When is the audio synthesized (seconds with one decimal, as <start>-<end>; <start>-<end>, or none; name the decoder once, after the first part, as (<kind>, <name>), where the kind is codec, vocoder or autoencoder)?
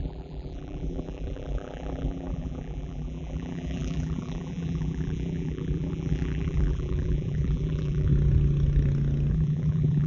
0.0-8.1 (vocoder, BigVGAN v2); 9.3-10.1